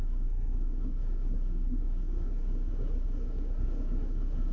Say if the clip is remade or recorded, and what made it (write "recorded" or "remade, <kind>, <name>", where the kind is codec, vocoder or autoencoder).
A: remade, codec, SNAC